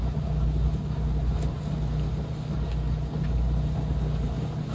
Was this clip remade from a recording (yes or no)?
no